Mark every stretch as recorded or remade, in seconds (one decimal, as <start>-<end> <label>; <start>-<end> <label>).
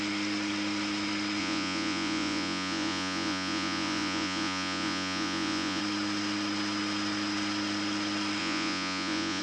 0.0-1.4 recorded; 1.4-5.8 remade; 5.8-8.4 recorded; 8.4-9.4 remade